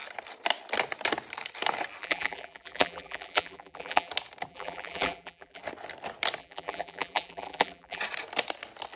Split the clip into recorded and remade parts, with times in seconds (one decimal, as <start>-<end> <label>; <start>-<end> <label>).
0.0-2.0 recorded; 2.0-4.1 remade; 4.1-4.5 recorded; 4.5-5.6 remade; 5.6-6.4 recorded; 6.4-8.0 remade; 8.0-9.0 recorded